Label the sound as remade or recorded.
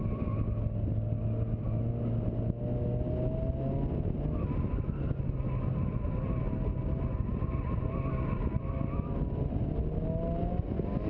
recorded